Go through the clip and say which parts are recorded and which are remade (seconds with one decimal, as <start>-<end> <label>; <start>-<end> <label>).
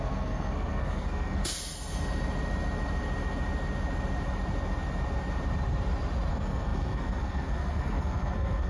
0.0-1.4 remade; 1.4-6.3 recorded; 6.3-8.7 remade